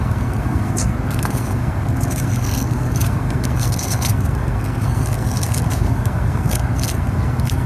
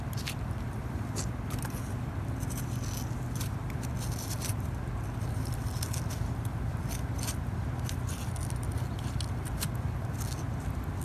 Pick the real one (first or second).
second